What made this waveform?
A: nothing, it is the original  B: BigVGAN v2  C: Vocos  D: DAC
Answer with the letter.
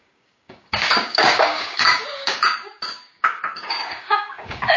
D